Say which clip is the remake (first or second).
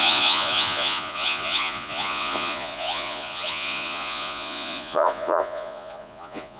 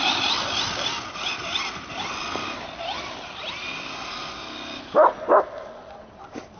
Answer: first